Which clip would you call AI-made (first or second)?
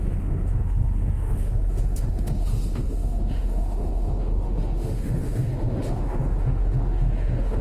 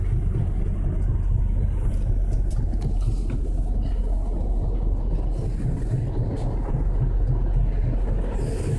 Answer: first